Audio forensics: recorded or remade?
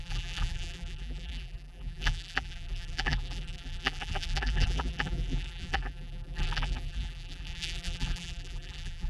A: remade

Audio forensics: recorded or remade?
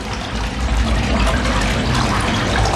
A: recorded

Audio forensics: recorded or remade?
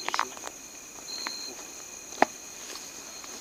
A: remade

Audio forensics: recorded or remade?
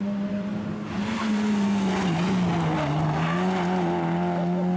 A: recorded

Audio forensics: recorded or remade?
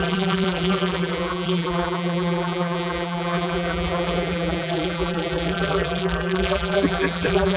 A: remade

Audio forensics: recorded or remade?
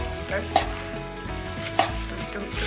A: recorded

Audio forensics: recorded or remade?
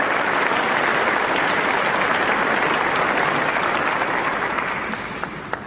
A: recorded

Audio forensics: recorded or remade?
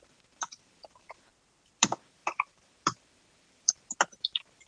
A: remade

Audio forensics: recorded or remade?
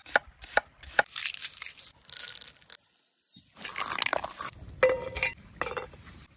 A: recorded